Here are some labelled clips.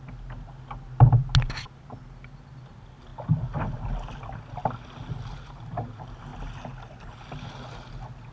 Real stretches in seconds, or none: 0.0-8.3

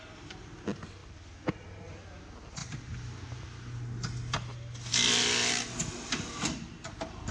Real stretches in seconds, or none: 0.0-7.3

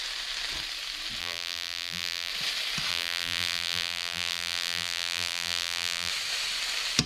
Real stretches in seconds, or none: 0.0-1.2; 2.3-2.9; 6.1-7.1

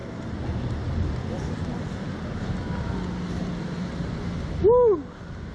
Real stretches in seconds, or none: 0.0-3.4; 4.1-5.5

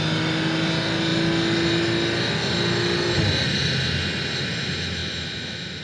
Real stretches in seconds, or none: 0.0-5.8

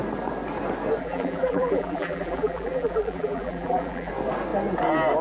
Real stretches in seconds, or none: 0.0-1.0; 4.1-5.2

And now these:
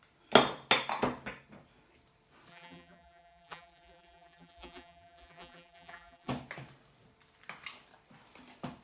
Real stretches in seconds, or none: 0.0-2.5; 6.3-8.8